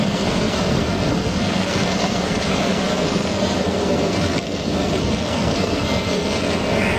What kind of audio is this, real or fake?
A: fake